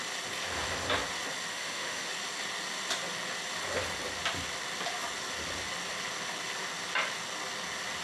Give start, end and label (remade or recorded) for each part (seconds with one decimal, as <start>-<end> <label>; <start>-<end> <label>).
0.0-1.5 recorded; 1.5-2.1 remade; 2.1-8.0 recorded